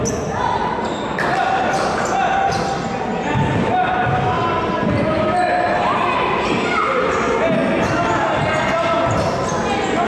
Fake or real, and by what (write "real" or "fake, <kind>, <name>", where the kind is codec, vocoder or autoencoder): real